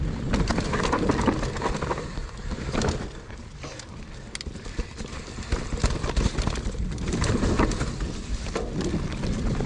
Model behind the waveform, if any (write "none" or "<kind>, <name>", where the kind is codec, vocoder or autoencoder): none